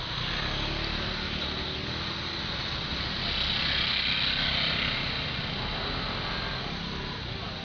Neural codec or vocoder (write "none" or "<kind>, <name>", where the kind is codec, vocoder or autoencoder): none